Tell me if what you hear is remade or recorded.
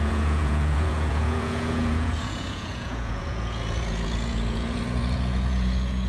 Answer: remade